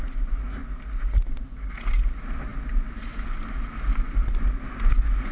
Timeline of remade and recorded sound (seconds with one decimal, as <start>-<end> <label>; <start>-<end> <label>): 0.0-5.3 recorded